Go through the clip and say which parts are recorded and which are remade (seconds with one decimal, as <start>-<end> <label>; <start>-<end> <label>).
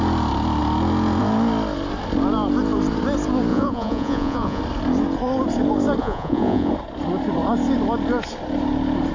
0.0-3.5 recorded; 3.5-4.6 remade; 4.6-6.0 recorded; 6.0-6.7 remade; 6.7-9.1 recorded